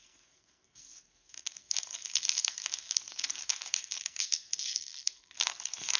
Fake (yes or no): yes